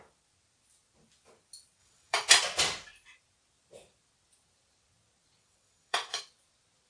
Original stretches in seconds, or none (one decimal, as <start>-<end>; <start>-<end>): 0.0-1.8; 2.3-5.4; 6.2-6.9